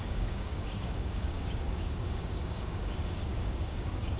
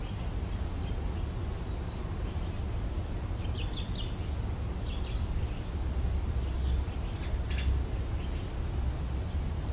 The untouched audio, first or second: second